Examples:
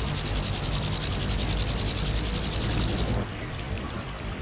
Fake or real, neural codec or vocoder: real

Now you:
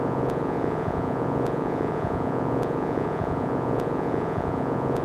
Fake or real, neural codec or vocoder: fake, vocoder, Vocos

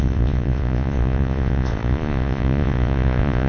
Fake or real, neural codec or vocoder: fake, vocoder, Vocos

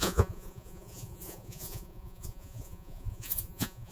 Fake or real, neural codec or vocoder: fake, vocoder, Vocos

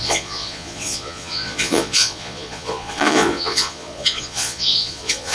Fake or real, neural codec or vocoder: fake, vocoder, Vocos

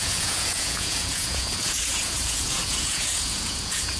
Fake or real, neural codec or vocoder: fake, vocoder, Vocos